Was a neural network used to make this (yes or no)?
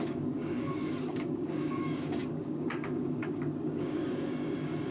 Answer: yes